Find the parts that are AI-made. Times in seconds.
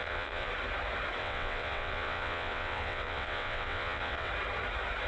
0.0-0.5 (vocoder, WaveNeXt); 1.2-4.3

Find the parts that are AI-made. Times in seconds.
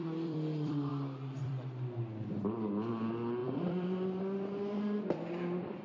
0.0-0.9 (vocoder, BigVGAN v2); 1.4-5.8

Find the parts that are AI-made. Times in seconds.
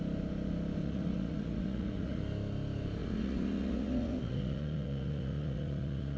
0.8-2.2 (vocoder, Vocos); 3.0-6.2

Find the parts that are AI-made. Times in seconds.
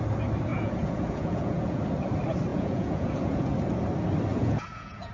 0.5-1.8 (vocoder, Vocos); 2.5-3.5; 4.3-5.1